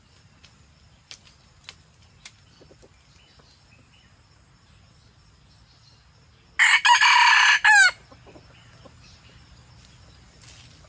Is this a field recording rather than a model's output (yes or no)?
yes